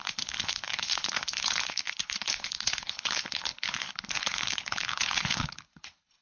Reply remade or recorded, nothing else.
remade